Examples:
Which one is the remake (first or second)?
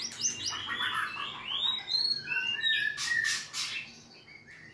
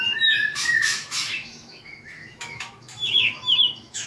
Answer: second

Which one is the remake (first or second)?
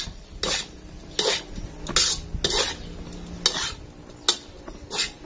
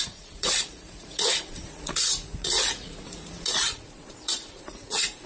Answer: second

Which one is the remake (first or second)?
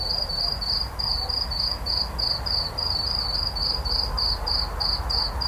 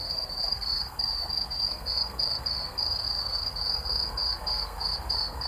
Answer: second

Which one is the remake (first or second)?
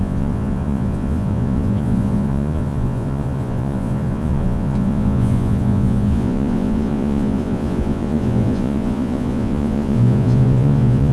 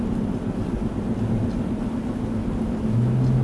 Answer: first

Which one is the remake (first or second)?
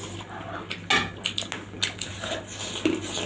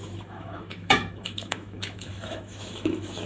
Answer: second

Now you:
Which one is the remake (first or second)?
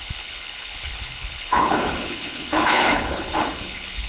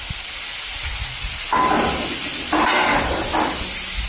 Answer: first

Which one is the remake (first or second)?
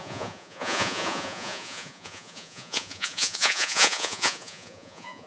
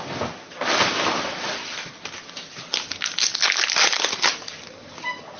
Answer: first